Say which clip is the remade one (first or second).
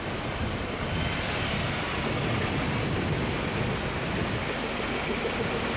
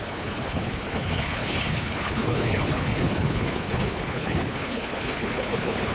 second